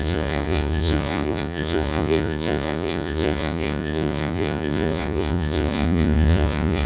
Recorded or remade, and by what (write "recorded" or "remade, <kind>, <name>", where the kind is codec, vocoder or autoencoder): remade, vocoder, Vocos